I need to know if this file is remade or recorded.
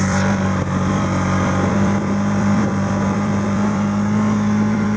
remade